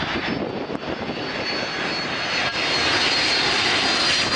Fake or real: real